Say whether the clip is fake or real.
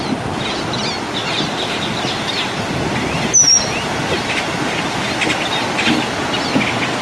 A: real